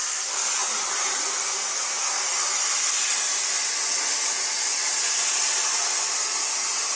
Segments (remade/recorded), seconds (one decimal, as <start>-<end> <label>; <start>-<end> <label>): 0.0-7.0 recorded